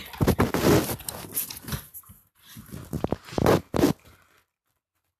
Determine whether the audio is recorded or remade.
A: recorded